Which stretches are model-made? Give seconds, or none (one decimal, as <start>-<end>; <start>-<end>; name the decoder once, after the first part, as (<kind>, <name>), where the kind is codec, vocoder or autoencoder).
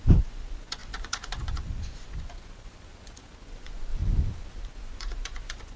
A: 0.0-3.9 (vocoder, Vocos); 4.6-5.8